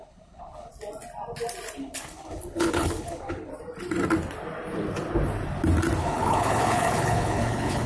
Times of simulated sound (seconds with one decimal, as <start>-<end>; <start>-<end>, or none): 0.0-0.7; 1.8-3.5; 6.0-7.9